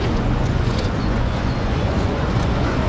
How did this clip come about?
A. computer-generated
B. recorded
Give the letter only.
A